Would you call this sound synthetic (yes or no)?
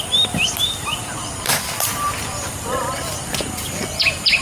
yes